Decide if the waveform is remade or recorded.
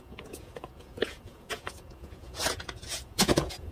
remade